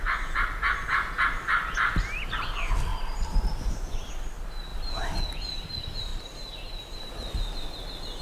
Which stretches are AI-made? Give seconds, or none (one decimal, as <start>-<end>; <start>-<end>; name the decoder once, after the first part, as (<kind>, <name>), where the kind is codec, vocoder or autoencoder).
2.9-4.1 (vocoder, BigVGAN v2); 6.1-7.3